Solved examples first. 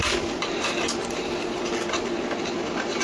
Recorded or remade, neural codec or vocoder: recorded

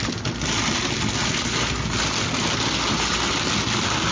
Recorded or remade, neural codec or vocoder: recorded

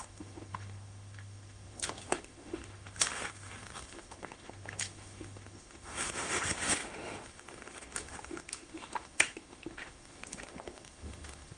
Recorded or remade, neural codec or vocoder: remade, autoencoder, DAC-VAE